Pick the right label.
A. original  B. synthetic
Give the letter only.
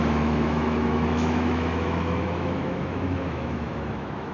B